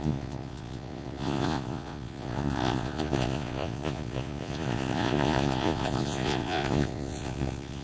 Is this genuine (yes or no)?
no